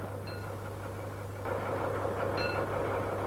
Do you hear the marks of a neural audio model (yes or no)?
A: no